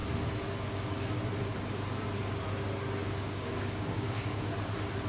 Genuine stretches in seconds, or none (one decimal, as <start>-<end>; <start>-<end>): 0.0-3.0; 4.5-5.1

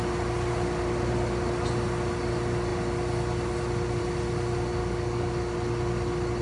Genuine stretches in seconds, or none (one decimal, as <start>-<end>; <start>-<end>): 0.0-4.8; 5.3-6.4